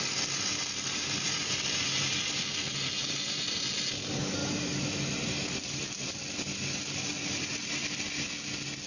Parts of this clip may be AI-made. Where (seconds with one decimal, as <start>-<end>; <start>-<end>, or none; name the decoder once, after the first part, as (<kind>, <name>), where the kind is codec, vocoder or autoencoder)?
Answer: none